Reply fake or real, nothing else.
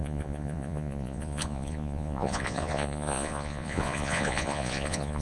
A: fake